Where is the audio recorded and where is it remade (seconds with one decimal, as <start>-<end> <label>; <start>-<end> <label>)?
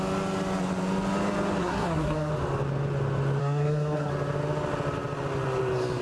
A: 0.0-1.6 recorded; 1.6-2.3 remade; 2.3-3.4 recorded; 3.4-4.1 remade; 4.1-6.0 recorded